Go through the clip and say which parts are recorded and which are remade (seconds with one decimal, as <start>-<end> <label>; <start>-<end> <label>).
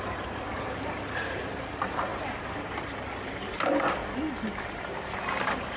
0.0-2.1 remade; 2.1-2.6 recorded; 2.6-4.0 remade; 4.0-4.7 recorded; 4.7-5.8 remade